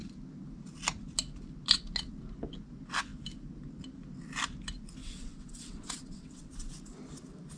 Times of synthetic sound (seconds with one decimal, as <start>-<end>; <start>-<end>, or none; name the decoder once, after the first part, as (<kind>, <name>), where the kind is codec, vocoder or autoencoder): 5.0-6.5 (vocoder, WaveNeXt)